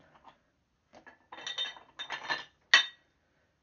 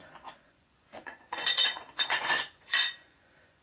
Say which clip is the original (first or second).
first